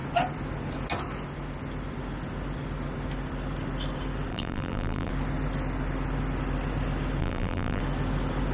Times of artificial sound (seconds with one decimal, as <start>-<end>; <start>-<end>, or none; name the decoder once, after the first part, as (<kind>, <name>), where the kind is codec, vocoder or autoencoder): 4.3-5.1 (vocoder, BigVGAN v2); 7.2-7.8